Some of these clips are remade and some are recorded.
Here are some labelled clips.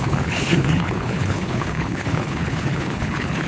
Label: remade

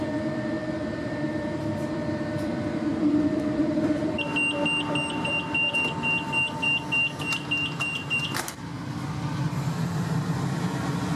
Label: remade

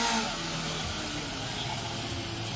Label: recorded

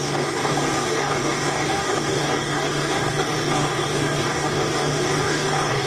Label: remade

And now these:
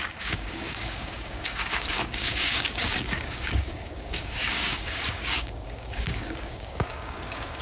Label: remade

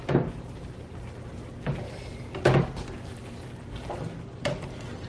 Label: recorded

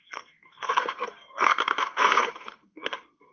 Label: remade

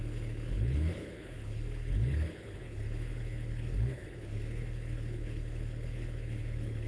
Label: remade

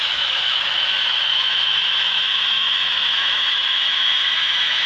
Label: remade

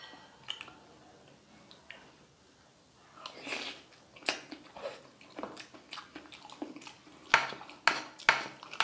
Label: recorded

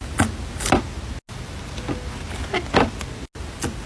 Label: recorded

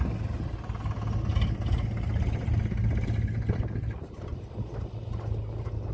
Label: recorded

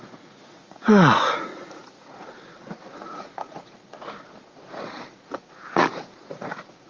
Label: remade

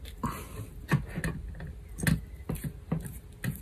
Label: recorded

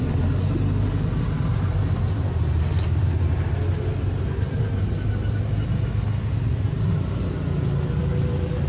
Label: recorded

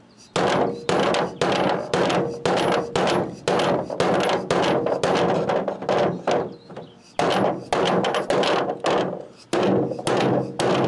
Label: recorded